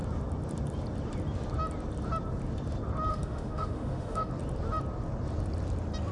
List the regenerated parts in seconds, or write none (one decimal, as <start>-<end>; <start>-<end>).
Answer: 3.1-4.3